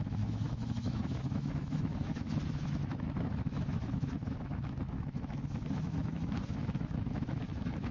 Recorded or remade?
remade